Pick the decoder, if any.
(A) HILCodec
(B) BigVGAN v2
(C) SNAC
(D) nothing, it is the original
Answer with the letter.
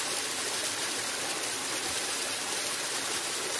D